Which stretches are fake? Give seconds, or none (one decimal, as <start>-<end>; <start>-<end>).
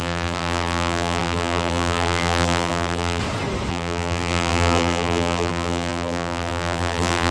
0.0-3.2; 3.7-7.3